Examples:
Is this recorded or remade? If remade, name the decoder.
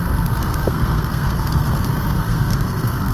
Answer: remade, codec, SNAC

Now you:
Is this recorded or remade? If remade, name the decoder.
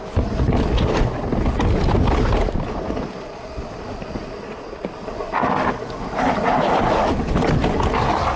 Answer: recorded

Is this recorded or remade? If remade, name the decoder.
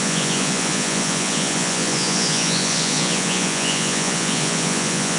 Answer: remade, vocoder, Vocos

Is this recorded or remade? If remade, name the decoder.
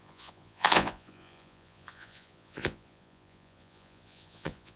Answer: remade, vocoder, Vocos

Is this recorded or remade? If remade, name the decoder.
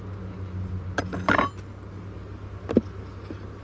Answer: recorded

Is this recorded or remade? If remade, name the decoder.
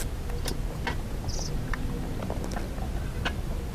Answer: recorded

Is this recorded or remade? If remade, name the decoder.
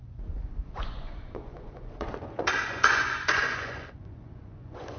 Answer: remade, vocoder, Vocos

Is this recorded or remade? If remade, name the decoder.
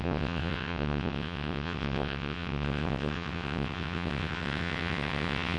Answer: remade, vocoder, WaveNeXt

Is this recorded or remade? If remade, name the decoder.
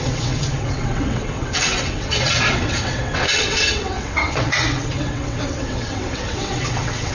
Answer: remade, vocoder, WaveNeXt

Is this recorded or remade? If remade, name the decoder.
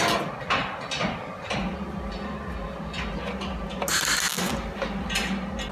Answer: recorded